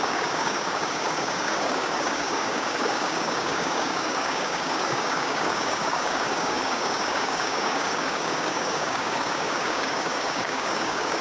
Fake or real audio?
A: fake